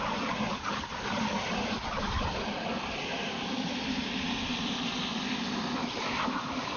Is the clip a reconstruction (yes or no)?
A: yes